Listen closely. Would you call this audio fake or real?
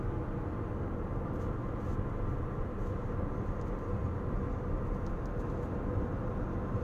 real